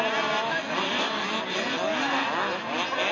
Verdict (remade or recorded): recorded